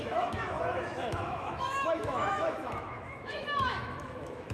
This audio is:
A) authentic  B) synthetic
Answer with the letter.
B